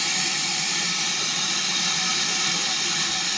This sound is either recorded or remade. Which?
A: recorded